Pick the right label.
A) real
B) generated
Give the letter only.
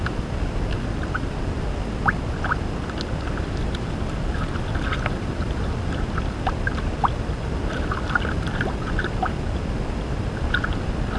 A